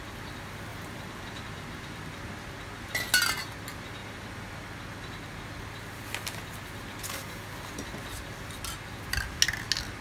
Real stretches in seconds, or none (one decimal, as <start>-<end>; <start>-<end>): 0.0-0.7; 3.1-4.0; 4.5-10.0